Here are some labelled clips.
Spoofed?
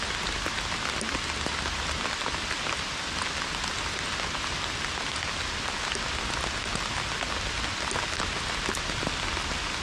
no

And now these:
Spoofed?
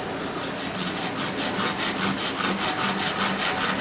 no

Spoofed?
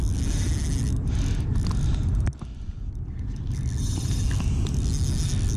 no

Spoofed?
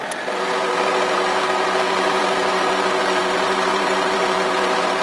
yes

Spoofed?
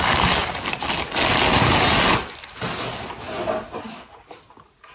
no